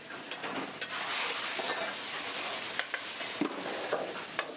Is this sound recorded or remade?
recorded